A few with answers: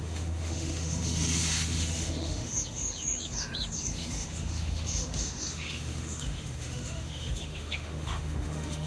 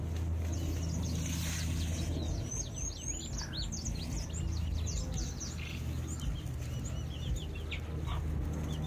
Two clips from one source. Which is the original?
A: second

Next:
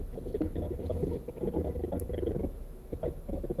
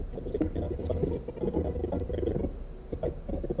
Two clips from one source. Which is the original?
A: second